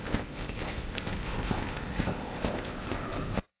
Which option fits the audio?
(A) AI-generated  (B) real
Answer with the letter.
A